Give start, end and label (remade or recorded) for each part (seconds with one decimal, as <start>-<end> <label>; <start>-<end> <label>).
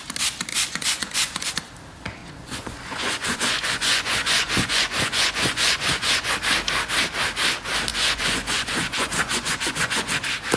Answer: 0.0-0.5 recorded; 0.5-1.6 remade; 1.6-2.2 recorded; 2.2-6.3 remade; 6.3-7.9 recorded; 7.9-10.1 remade; 10.1-10.6 recorded